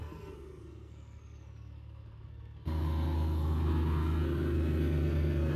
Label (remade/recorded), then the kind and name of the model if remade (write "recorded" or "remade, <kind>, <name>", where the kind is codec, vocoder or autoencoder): remade, codec, SNAC